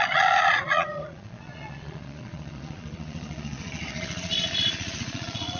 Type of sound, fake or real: fake